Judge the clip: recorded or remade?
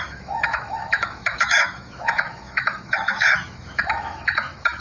remade